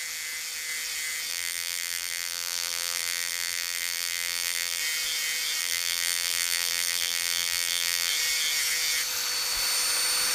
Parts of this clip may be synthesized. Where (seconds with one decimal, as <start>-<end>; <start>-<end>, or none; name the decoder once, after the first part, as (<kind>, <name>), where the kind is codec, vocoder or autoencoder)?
1.3-4.8 (vocoder, BigVGAN v2); 5.6-8.1